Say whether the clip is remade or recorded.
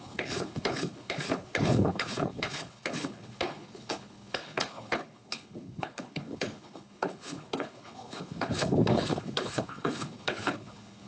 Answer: remade